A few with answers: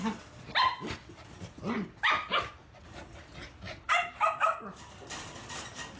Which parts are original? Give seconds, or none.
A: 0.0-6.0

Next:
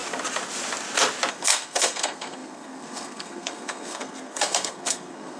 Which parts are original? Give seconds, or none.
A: 0.0-1.3

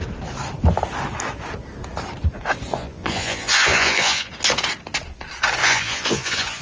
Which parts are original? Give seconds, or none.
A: 0.0-2.7; 4.3-5.6

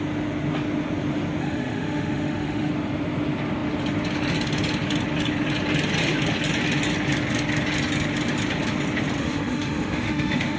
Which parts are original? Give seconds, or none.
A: 0.0-1.4; 2.7-9.2